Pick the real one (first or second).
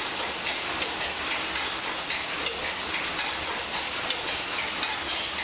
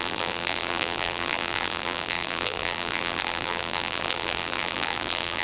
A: first